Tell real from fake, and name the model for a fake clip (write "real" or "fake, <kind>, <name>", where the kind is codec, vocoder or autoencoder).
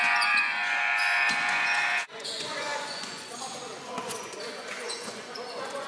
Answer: fake, vocoder, Vocos